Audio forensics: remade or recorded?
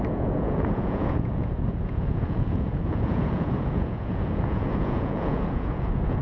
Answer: remade